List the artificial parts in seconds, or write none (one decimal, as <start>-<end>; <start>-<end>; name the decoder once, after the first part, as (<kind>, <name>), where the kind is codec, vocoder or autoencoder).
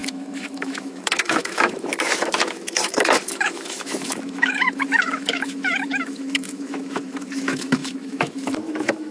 0.0-9.1 (autoencoder, DAC-VAE)